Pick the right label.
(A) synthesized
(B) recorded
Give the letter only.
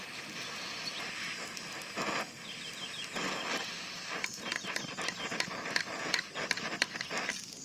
B